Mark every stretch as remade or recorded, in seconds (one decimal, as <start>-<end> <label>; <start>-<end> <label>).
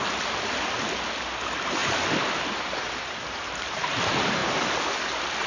0.0-1.8 recorded; 1.8-4.0 remade; 4.0-5.5 recorded